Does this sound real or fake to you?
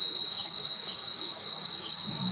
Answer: fake